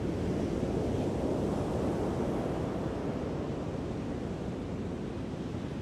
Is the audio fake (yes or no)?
no